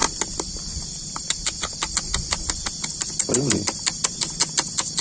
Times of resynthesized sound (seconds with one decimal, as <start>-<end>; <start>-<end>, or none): none